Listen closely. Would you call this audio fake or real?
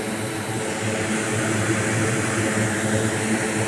real